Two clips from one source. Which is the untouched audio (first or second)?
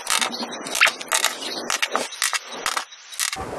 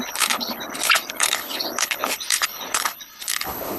first